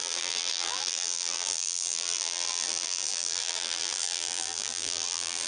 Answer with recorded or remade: remade